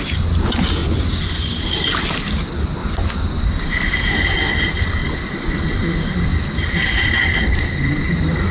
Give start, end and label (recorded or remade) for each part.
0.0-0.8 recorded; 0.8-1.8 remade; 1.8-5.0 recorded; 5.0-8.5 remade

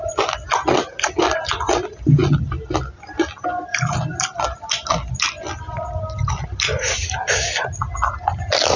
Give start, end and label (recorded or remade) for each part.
0.0-8.8 recorded

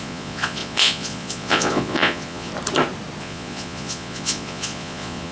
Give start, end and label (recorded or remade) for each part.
0.0-2.5 remade; 2.5-3.2 recorded; 3.2-5.3 remade